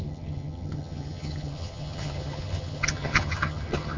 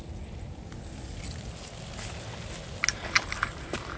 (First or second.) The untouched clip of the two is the second